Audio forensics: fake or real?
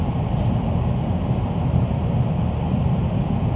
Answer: real